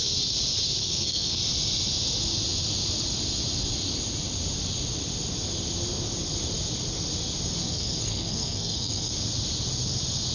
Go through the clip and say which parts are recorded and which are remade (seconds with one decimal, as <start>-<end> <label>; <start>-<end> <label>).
0.0-0.8 recorded; 0.8-1.4 remade; 1.4-7.6 recorded; 7.6-9.1 remade; 9.1-10.3 recorded